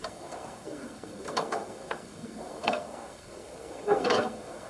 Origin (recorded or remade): remade